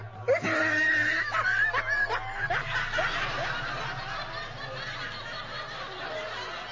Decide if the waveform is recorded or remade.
recorded